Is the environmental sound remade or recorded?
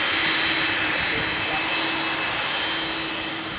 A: recorded